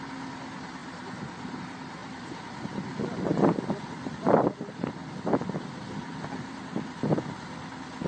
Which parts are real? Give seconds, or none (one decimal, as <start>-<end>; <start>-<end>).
0.0-0.8; 1.6-2.0; 2.7-8.1